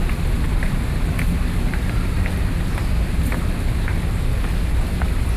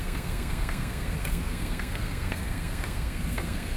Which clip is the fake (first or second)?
second